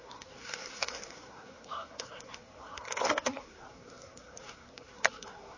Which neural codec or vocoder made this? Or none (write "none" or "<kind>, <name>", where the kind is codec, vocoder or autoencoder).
codec, SNAC